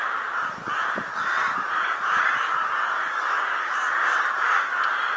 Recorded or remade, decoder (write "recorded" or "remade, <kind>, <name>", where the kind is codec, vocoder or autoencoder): recorded